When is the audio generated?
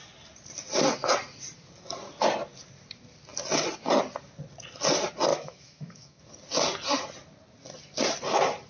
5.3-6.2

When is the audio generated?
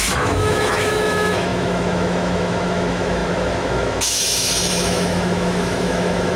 0.0-6.4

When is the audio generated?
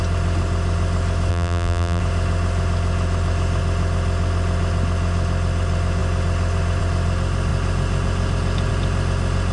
1.3-2.0